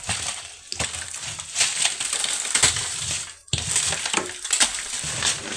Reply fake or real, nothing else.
real